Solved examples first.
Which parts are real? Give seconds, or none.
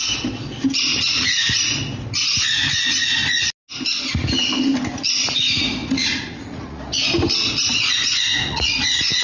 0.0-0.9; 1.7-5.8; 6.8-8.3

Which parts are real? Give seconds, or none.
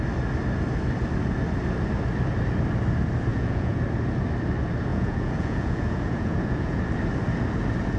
0.0-3.3; 3.8-4.9; 6.8-8.0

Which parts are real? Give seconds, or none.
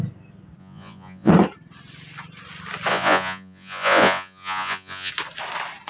0.0-0.6; 1.3-2.9; 5.1-5.9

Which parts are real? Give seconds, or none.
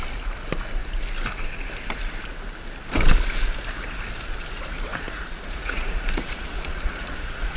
0.0-4.9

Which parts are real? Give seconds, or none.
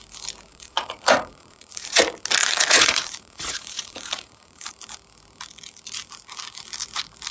0.0-0.5; 2.0-2.4; 4.7-7.3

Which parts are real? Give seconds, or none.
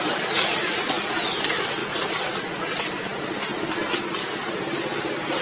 0.0-1.8; 2.8-5.4